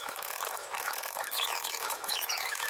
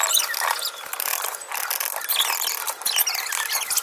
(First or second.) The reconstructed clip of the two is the first